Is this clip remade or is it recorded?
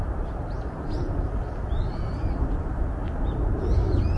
recorded